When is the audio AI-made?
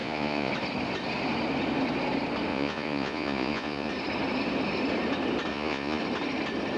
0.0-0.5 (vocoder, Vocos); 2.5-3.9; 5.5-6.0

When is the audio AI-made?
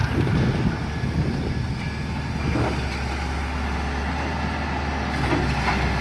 0.0-0.7 (vocoder, BigVGAN v2)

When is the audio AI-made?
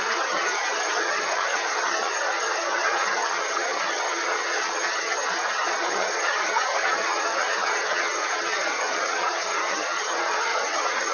0.0-11.1 (vocoder, HiFi-GAN)